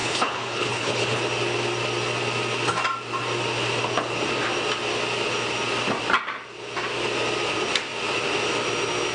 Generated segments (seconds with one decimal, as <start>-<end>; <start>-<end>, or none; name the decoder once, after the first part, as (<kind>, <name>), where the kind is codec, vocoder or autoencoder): 0.0-1.2 (codec, HILCodec)